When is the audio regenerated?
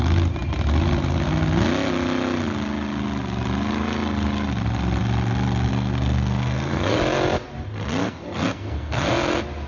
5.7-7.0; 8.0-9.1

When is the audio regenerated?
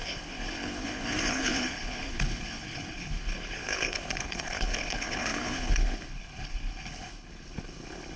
0.0-8.2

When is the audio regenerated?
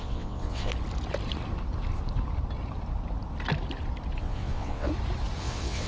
0.0-0.7; 4.2-4.9; 5.4-5.9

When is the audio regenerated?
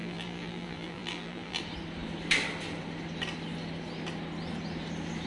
0.0-1.6